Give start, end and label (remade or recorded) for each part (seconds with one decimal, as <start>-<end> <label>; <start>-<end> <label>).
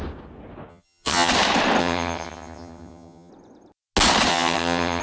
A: 0.0-0.7 recorded; 0.7-1.3 remade; 1.3-1.8 recorded; 1.8-3.3 remade; 3.3-4.3 recorded; 4.3-5.0 remade